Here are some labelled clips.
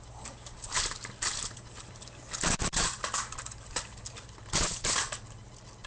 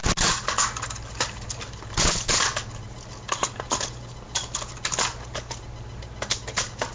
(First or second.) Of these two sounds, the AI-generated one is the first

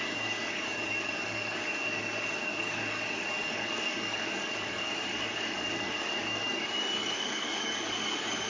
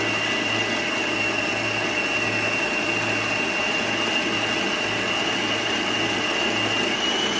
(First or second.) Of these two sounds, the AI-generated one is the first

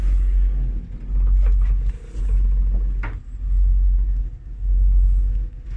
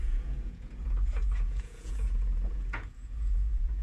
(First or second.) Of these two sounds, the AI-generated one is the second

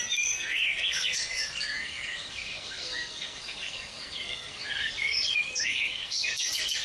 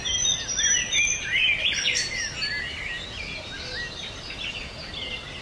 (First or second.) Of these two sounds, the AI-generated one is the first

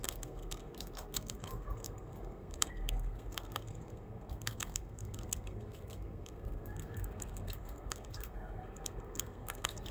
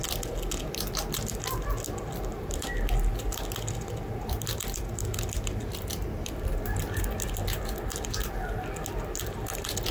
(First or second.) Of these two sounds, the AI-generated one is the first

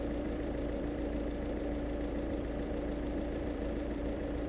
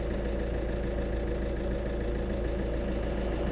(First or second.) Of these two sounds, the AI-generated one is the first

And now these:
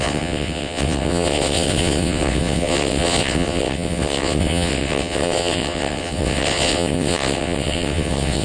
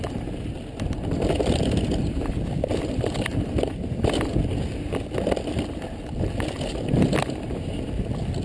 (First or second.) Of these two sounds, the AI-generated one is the first